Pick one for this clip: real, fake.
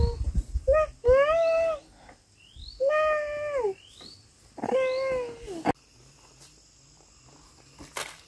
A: real